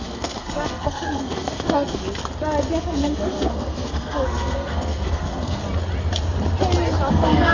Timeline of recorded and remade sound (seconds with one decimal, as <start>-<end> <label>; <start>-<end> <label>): 0.0-2.0 remade; 2.0-2.8 recorded; 2.8-5.6 remade; 5.6-7.1 recorded; 7.1-7.5 remade